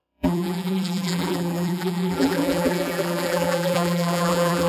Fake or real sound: fake